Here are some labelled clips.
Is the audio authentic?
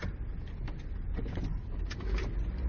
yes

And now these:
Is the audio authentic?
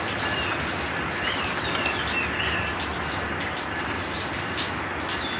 yes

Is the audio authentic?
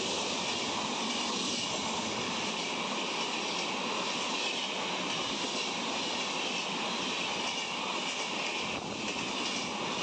yes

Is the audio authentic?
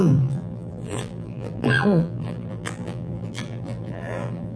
no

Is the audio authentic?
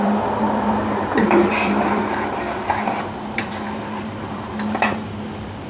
no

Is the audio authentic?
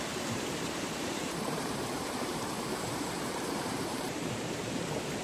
no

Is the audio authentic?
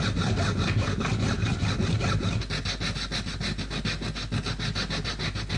yes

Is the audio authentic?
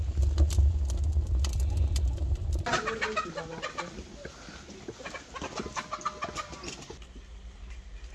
yes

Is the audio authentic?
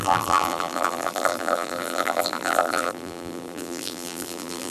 no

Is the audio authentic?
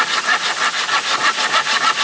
yes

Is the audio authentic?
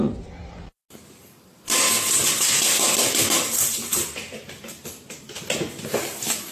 yes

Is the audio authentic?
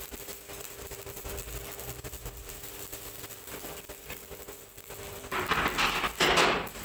yes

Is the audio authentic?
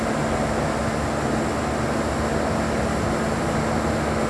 yes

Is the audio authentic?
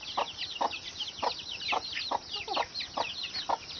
no